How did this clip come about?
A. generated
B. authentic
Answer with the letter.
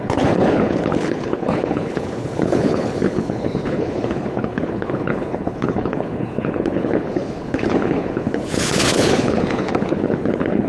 A